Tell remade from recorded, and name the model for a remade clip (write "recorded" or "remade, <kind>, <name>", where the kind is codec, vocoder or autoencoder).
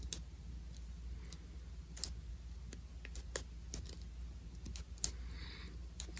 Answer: recorded